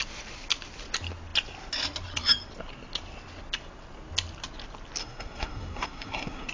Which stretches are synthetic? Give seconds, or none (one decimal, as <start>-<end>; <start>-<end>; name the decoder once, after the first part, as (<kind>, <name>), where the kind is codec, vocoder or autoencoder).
5.0-6.5 (codec, SNAC)